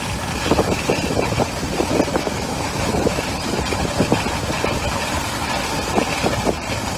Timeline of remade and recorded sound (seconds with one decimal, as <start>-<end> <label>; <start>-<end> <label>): 0.0-2.1 recorded; 2.1-3.2 remade; 3.2-7.0 recorded